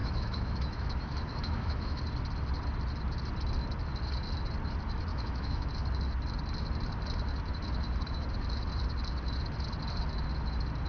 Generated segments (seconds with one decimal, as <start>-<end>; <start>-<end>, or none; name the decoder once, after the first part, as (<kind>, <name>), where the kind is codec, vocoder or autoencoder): 0.0-2.0 (autoencoder, DAC-VAE); 5.1-5.7